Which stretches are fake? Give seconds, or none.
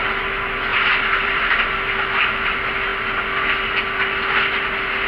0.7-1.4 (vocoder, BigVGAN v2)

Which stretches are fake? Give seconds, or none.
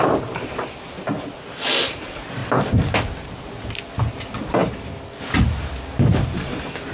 0.0-2.4 (vocoder, BigVGAN v2); 3.8-4.6; 5.2-6.9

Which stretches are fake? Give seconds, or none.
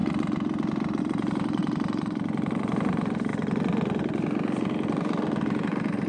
1.0-3.3 (vocoder, BigVGAN v2); 5.4-6.1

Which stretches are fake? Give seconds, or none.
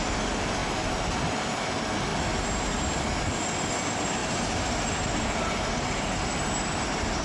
4.2-4.8 (vocoder, BigVGAN v2)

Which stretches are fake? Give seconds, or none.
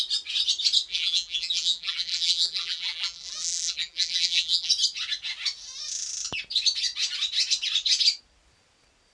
0.9-4.7 (vocoder, BigVGAN v2)